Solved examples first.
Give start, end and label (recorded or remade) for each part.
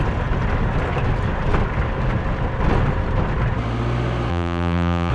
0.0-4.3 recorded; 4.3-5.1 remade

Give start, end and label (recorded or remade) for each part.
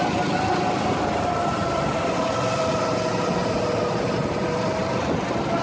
0.0-1.6 recorded; 1.6-2.7 remade; 2.7-3.4 recorded; 3.4-5.0 remade; 5.0-5.6 recorded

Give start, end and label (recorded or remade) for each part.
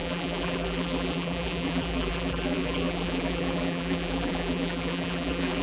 0.0-5.6 remade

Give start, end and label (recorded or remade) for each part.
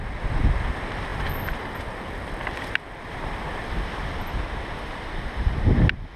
0.0-1.1 recorded; 1.1-4.2 remade; 4.2-6.2 recorded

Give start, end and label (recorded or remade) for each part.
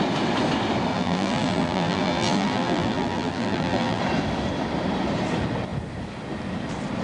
0.0-0.9 recorded; 0.9-4.0 remade; 4.0-7.0 recorded